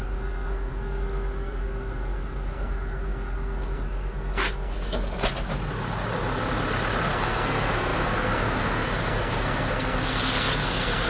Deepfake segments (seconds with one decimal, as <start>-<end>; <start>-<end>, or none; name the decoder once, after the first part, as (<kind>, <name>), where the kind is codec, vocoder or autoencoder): 0.0-5.2 (codec, SNAC); 7.1-11.1